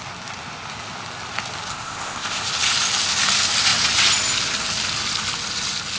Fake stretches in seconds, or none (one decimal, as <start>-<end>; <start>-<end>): 1.7-2.4